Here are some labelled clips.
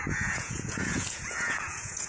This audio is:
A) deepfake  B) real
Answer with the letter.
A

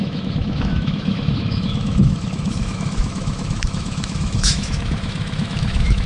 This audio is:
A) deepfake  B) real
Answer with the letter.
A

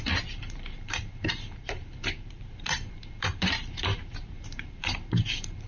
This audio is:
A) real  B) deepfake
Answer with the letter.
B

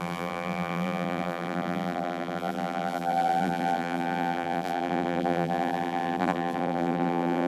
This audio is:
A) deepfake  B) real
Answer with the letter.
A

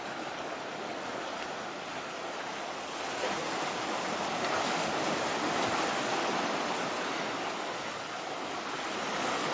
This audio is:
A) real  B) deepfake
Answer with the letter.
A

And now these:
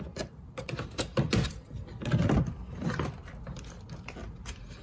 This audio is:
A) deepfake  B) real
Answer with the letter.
B